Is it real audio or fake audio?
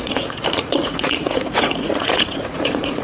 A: fake